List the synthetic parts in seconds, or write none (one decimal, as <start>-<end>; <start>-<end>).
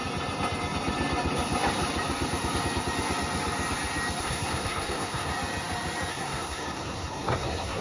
4.2-5.3; 6.1-7.8